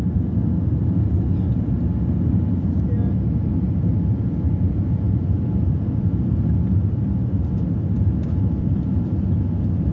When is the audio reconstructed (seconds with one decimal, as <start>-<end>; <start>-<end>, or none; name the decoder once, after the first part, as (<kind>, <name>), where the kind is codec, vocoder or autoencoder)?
3.9-9.1 (vocoder, BigVGAN v2)

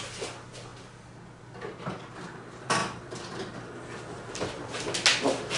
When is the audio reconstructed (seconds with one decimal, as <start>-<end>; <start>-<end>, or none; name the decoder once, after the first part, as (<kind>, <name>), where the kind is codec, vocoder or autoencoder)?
2.8-4.7 (vocoder, BigVGAN v2)

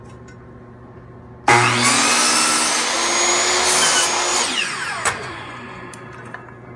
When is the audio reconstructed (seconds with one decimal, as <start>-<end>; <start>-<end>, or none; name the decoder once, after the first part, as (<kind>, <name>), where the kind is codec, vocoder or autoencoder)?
4.3-5.9 (vocoder, Vocos)

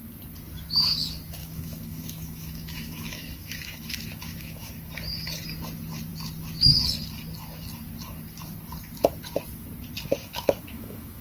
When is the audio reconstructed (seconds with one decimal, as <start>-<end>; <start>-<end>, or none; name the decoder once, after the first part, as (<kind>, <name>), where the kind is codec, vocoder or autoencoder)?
1.4-4.7 (autoencoder, DAC-VAE); 10.2-11.2